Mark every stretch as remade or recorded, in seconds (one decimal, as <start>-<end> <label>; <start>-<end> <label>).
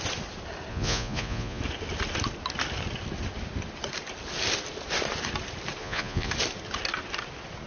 0.0-0.7 recorded; 0.7-1.6 remade; 1.6-5.8 recorded; 5.8-6.3 remade; 6.3-7.7 recorded